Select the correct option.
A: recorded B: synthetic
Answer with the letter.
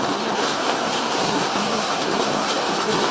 B